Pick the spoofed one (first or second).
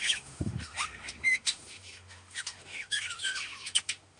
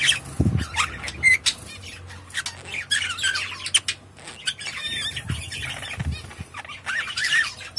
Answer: first